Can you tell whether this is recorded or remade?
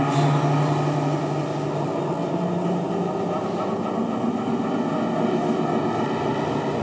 recorded